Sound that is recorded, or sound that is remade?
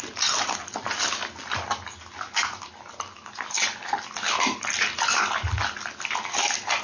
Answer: recorded